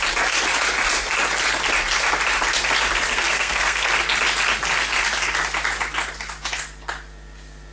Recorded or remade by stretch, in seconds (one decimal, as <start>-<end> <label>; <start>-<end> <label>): 0.0-3.1 recorded; 3.1-3.9 remade; 3.9-7.7 recorded